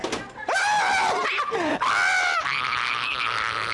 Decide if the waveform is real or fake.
real